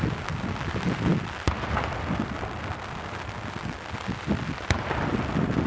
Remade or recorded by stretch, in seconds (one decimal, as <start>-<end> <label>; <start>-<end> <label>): 0.0-5.7 recorded